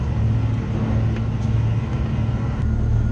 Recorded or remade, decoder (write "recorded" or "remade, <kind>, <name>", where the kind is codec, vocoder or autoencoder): recorded